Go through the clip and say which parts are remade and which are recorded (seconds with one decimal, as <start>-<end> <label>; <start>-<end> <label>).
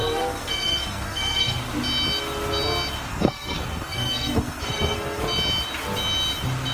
0.0-1.6 remade; 1.6-3.1 recorded; 3.1-5.2 remade; 5.2-6.7 recorded